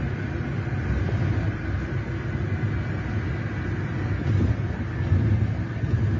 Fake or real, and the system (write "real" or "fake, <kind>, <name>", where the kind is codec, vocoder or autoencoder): real